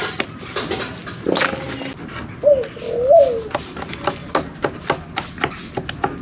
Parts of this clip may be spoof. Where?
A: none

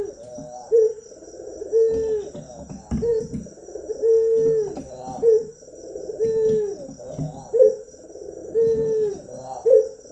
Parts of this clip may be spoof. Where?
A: none

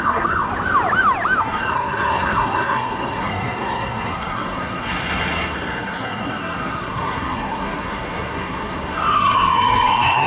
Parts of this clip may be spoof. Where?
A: 0.0-0.5 (codec, SNAC); 1.4-10.3

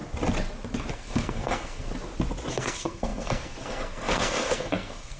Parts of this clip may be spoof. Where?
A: 0.9-1.9 (codec, SNAC); 2.5-5.2

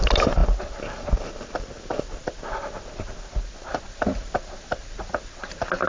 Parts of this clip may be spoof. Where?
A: none

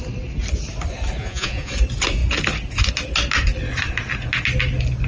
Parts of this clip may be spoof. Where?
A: 1.2-1.7 (vocoder, Vocos)

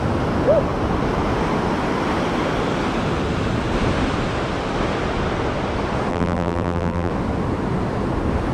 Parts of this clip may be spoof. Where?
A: 6.1-7.1 (vocoder, BigVGAN v2)